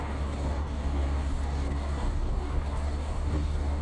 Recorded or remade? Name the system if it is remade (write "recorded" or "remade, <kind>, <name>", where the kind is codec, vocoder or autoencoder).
remade, codec, DAC